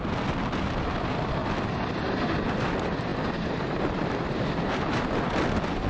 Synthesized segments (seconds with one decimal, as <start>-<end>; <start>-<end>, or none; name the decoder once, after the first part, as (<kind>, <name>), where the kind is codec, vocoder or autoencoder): 3.1-5.2 (vocoder, BigVGAN v2)